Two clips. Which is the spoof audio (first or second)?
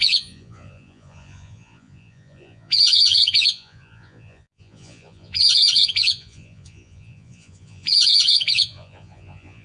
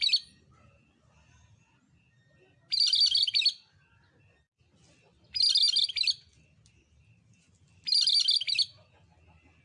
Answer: first